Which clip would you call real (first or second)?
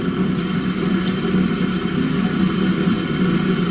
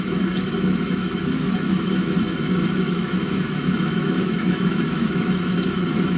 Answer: first